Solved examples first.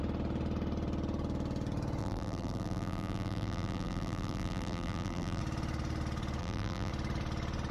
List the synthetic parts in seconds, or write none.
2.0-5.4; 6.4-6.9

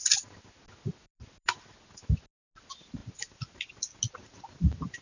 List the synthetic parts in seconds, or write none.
none

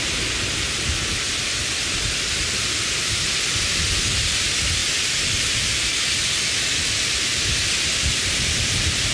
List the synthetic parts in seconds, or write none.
none

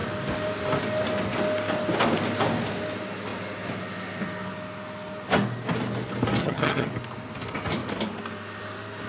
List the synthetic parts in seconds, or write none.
6.4-6.9

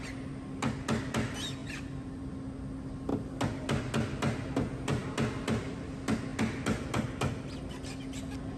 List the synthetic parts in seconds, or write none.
1.6-2.3

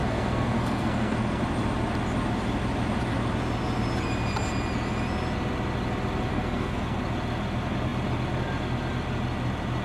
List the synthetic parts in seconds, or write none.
0.0-1.4; 6.3-7.0